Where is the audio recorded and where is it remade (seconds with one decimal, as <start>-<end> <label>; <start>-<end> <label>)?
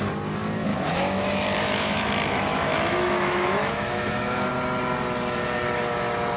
0.0-0.7 recorded; 0.7-4.5 remade; 4.5-6.4 recorded